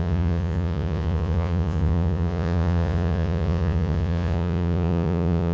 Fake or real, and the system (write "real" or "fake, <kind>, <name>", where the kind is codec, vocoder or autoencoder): fake, vocoder, Vocos